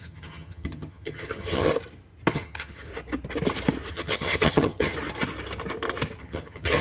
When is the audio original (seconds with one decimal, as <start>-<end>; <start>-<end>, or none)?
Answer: 1.7-2.3; 2.9-3.9; 4.9-6.2